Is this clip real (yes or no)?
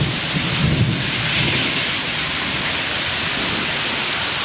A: yes